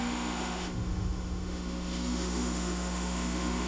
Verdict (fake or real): fake